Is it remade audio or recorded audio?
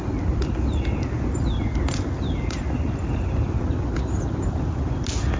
recorded